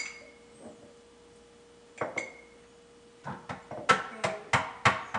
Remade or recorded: recorded